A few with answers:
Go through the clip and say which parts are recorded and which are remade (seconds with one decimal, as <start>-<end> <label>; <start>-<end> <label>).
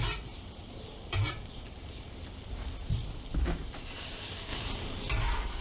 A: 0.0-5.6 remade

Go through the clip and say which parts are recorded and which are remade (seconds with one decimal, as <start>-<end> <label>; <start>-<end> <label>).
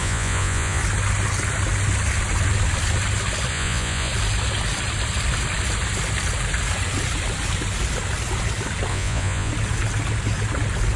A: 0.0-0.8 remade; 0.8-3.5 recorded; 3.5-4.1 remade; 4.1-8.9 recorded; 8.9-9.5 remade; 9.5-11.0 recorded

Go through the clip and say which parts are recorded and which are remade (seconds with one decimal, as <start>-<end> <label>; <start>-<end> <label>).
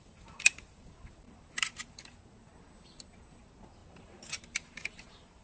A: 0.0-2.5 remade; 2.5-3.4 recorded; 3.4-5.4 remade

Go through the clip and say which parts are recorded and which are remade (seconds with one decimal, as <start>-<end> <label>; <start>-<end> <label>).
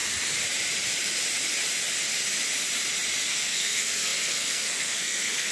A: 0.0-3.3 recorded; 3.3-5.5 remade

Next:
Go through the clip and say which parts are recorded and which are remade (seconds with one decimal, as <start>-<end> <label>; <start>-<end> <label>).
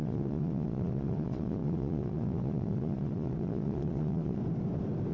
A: 0.0-4.4 remade; 4.4-5.1 recorded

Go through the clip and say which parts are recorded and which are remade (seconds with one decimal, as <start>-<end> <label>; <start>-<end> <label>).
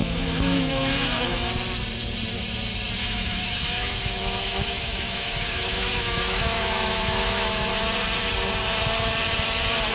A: 0.0-1.5 remade; 1.5-3.0 recorded; 3.0-7.7 remade; 7.7-9.9 recorded